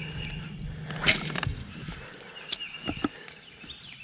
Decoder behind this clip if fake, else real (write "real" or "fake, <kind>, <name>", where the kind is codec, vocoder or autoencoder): real